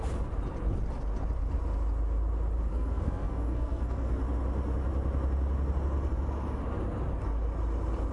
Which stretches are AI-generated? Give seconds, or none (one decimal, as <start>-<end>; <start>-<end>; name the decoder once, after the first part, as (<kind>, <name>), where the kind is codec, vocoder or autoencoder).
2.7-4.2 (codec, SNAC)